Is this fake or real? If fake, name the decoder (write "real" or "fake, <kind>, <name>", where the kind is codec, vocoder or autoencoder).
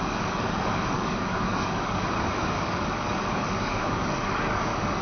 fake, codec, DAC